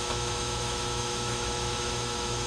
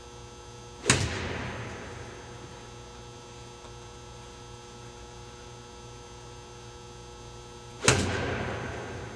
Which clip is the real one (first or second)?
second